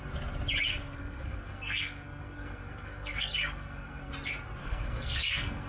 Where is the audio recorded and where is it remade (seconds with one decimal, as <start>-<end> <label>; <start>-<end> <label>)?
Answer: 0.0-0.7 recorded; 0.7-4.1 remade; 4.1-4.6 recorded; 4.6-5.7 remade